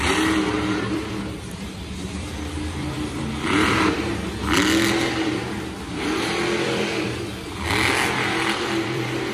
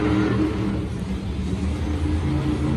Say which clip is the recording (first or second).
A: second